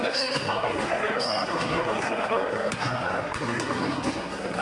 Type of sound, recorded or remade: remade